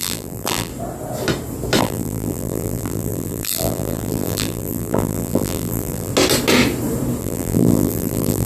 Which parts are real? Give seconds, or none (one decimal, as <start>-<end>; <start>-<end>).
0.7-1.8; 6.1-7.2